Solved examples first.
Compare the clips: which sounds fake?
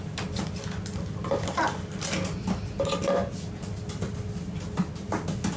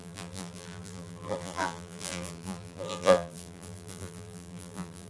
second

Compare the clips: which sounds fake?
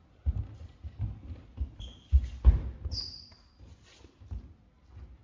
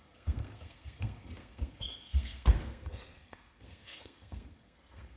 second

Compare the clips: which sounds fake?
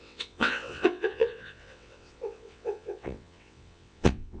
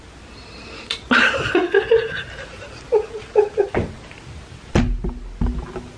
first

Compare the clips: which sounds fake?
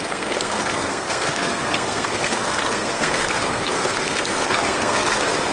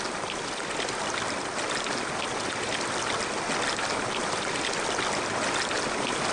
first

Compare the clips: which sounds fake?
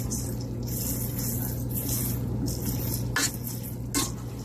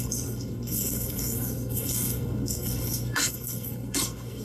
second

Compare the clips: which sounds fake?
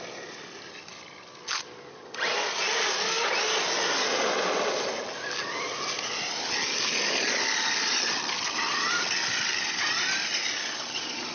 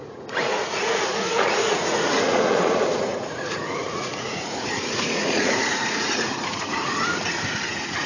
second